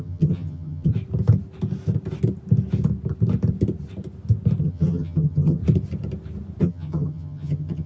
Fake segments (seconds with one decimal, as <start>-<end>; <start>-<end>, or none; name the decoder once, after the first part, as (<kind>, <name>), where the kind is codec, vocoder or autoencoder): 0.0-0.9 (vocoder, HiFi-GAN); 4.6-5.6; 6.6-7.9